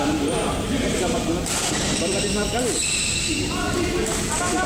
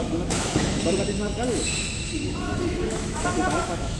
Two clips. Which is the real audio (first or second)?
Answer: first